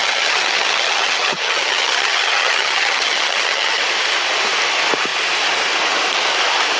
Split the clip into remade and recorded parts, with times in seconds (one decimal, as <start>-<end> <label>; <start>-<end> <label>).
0.0-3.8 remade; 3.8-6.8 recorded